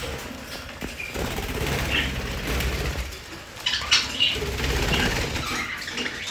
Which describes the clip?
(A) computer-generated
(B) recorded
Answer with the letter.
B